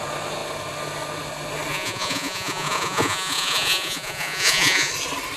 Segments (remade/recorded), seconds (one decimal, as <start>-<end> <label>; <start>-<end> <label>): 0.0-1.7 recorded; 1.7-4.9 remade; 4.9-5.4 recorded